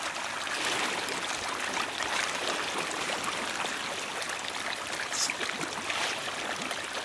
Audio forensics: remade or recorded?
recorded